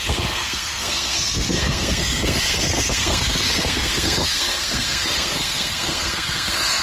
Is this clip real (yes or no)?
no